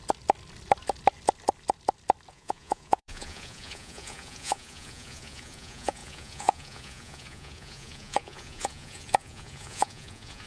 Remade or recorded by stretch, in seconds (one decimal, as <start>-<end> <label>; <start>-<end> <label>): 0.0-2.3 recorded; 2.3-10.5 remade